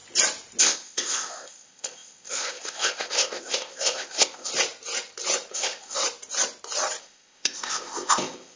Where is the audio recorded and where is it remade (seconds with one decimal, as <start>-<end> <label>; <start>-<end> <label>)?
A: 0.0-0.6 recorded; 0.6-4.5 remade; 4.5-5.5 recorded; 5.5-6.0 remade; 6.0-7.0 recorded; 7.0-8.6 remade